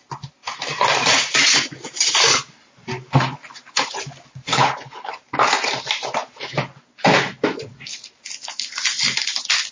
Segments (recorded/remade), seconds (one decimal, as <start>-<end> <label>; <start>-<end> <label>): 0.0-4.5 recorded; 4.5-5.1 remade; 5.1-9.7 recorded